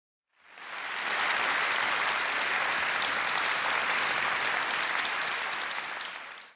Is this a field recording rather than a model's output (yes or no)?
yes